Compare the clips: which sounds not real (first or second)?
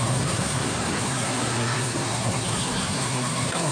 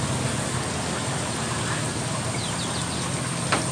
first